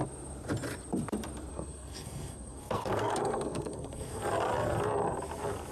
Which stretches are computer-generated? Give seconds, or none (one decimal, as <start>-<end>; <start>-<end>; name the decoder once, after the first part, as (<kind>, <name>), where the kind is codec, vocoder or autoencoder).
1.5-4.2 (codec, SNAC)